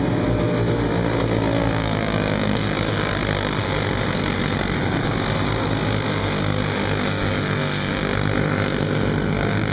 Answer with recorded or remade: recorded